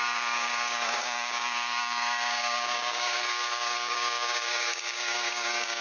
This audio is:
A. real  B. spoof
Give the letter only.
B